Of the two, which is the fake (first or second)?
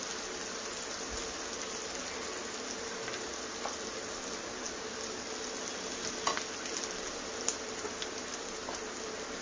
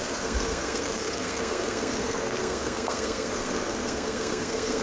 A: second